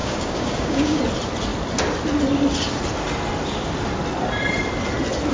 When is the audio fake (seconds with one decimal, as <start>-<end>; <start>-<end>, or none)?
0.0-1.0